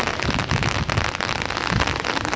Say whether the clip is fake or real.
real